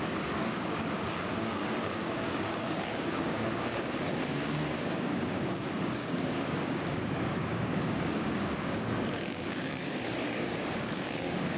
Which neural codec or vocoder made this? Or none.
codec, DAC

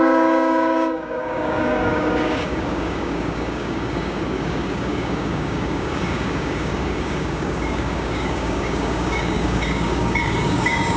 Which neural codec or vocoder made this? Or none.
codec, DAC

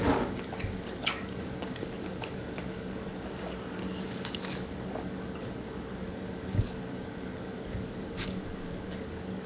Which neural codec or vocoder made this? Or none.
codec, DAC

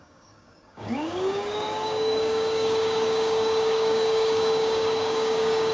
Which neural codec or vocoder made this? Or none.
codec, DAC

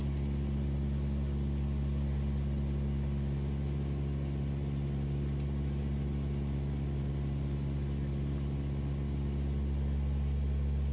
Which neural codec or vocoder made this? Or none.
none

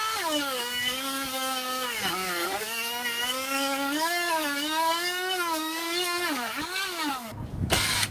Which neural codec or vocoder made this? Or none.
codec, DAC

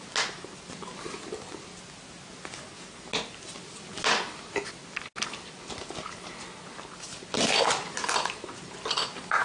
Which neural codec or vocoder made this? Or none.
none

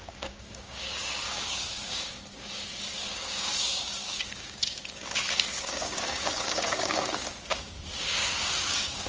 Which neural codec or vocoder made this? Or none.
codec, DAC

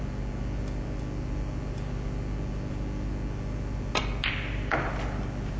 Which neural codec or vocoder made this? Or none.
none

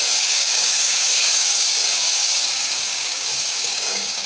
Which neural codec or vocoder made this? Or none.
codec, DAC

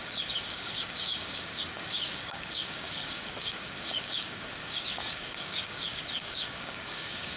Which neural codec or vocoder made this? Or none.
codec, DAC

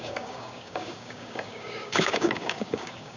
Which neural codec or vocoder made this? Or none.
codec, DAC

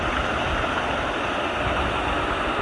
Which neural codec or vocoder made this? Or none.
none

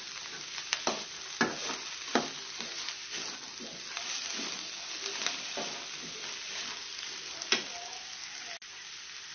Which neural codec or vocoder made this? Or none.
none